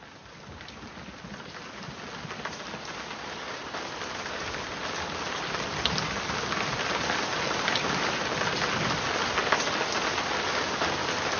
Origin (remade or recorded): recorded